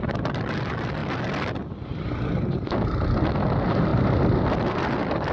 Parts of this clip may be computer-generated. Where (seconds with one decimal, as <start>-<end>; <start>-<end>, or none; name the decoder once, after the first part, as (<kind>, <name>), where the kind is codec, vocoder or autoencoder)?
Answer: none